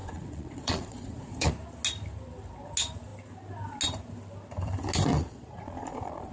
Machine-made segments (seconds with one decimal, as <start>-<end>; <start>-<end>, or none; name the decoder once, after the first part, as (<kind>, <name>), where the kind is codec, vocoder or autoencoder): 0.0-1.5 (vocoder, Vocos); 5.1-6.3